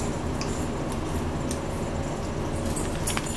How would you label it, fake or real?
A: real